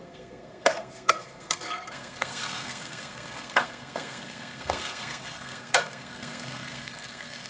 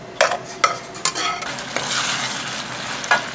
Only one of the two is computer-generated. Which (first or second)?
first